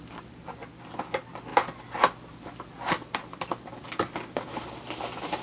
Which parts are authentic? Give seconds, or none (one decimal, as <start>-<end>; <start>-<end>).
0.0-1.5; 2.3-5.4